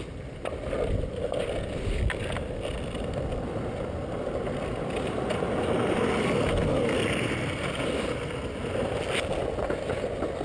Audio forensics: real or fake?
real